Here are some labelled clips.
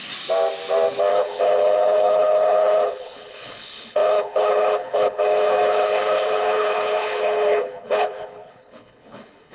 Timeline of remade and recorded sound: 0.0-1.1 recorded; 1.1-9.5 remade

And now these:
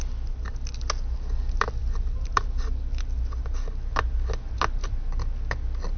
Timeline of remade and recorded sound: 0.0-6.0 recorded

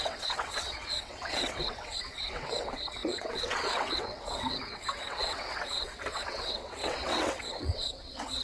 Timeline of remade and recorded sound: 0.0-8.4 remade

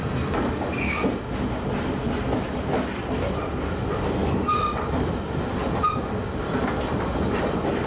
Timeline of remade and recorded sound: 0.0-7.9 recorded

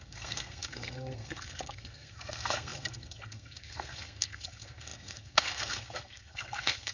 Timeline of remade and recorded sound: 0.0-6.9 remade

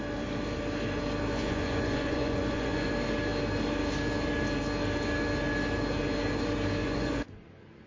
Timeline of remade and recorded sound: 0.0-1.3 recorded; 1.3-2.9 remade; 2.9-6.8 recorded; 6.8-7.9 remade

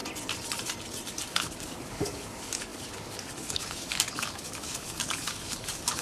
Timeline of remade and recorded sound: 0.0-1.2 recorded; 1.2-6.0 remade

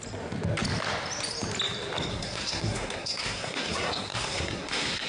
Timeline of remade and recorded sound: 0.0-2.1 recorded; 2.1-5.1 remade